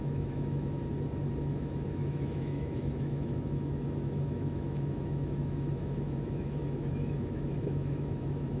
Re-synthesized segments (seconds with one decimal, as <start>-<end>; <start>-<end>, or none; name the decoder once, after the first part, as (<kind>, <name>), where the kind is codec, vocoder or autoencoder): 0.0-0.8 (autoencoder, DAC-VAE); 1.4-8.6